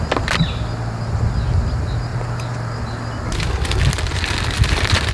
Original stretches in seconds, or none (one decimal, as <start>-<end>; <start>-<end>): 0.0-5.1